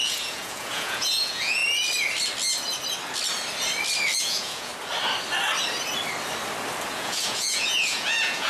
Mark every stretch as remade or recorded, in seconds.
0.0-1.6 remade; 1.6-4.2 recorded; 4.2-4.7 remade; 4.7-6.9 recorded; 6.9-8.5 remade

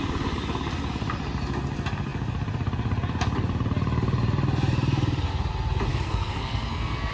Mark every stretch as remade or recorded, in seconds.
0.0-5.9 recorded; 5.9-7.1 remade

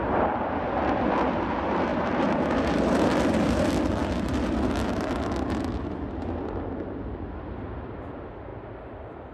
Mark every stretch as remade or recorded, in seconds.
0.0-1.9 recorded; 1.9-3.6 remade; 3.6-4.0 recorded; 4.0-5.6 remade; 5.6-9.3 recorded

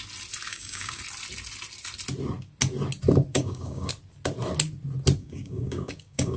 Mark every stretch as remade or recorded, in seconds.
0.0-0.5 recorded; 0.5-1.0 remade; 1.0-3.3 recorded; 3.3-3.9 remade; 3.9-5.2 recorded; 5.2-6.4 remade

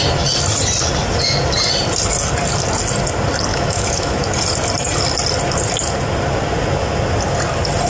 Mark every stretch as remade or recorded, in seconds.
0.0-3.5 recorded; 3.5-4.3 remade; 4.3-7.9 recorded

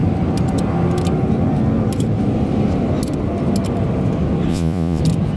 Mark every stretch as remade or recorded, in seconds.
0.0-4.5 recorded; 4.5-5.0 remade; 5.0-5.4 recorded